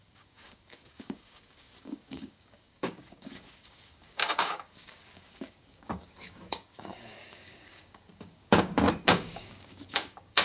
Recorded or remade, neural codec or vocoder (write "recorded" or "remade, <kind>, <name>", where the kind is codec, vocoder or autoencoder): remade, codec, DAC